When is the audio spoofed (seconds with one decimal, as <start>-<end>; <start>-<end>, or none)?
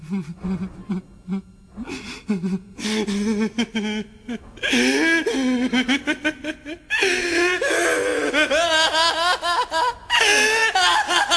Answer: none